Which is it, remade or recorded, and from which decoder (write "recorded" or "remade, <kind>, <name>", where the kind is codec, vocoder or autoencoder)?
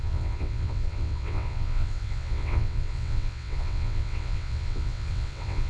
remade, vocoder, WaveNeXt